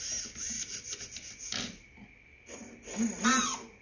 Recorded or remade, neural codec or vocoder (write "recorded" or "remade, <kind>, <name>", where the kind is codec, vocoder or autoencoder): recorded